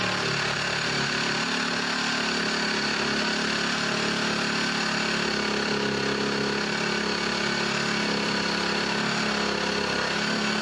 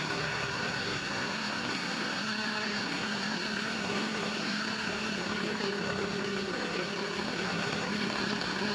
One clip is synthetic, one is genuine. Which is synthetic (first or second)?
second